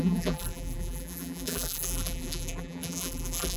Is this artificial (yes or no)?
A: yes